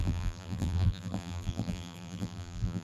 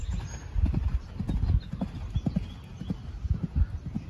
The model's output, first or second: first